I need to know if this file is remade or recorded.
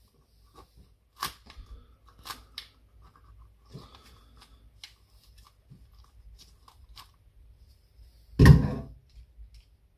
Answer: recorded